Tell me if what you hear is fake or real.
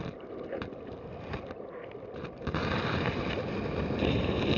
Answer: fake